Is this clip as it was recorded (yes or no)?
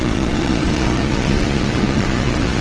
no